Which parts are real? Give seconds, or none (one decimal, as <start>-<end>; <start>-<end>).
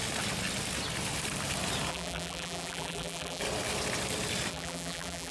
0.0-1.9; 3.4-4.5